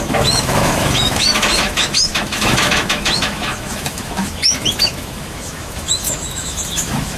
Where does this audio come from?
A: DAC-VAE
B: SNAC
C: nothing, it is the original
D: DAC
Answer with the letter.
A